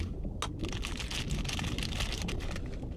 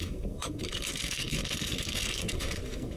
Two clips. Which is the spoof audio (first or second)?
second